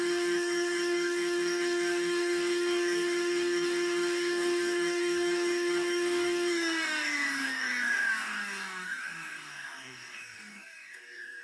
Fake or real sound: fake